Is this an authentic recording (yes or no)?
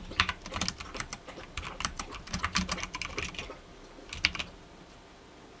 yes